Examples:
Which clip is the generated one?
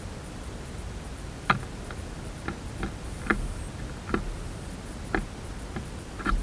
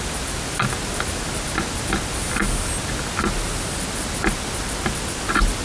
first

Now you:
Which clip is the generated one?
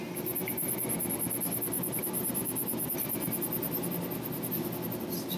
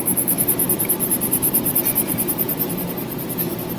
second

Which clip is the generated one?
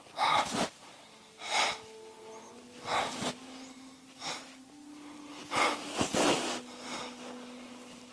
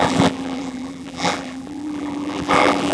second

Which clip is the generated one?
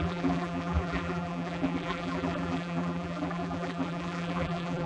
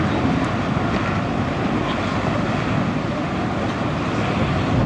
first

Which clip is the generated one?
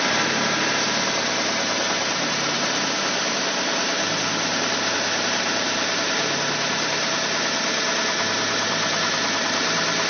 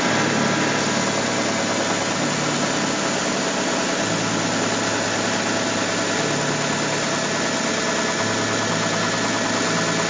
first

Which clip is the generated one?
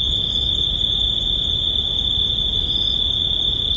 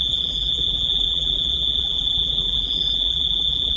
second